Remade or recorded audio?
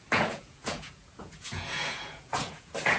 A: remade